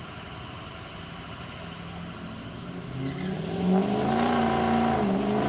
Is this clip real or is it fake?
real